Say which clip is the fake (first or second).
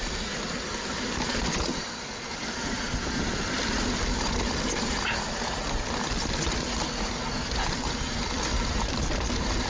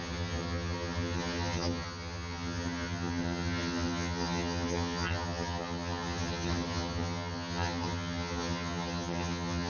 second